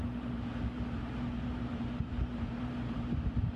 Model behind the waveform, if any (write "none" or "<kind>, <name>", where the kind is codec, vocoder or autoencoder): vocoder, BigVGAN v2